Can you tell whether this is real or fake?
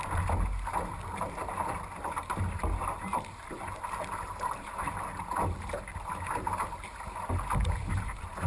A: real